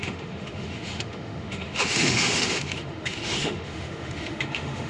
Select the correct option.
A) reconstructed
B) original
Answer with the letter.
A